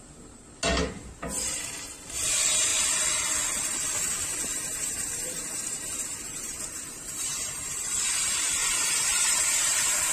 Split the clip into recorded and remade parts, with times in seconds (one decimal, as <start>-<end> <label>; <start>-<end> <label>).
0.0-4.5 recorded; 4.5-8.0 remade; 8.0-8.6 recorded; 8.6-9.4 remade; 9.4-10.1 recorded